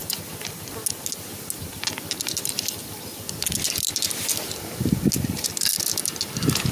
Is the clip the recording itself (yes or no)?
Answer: yes